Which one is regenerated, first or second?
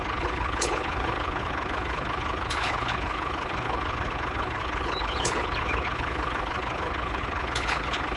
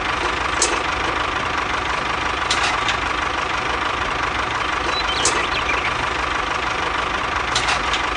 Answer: first